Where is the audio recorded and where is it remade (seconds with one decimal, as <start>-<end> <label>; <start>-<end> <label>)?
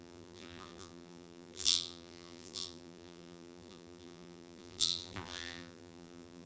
0.0-6.5 remade